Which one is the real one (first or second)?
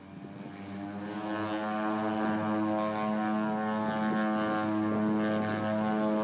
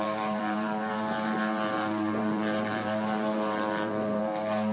first